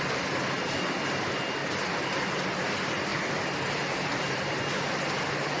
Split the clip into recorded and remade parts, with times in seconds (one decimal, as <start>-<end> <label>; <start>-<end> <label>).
0.0-5.6 recorded